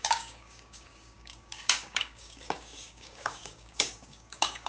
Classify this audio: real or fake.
fake